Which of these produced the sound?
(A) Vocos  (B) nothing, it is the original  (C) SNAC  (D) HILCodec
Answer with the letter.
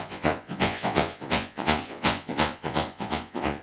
A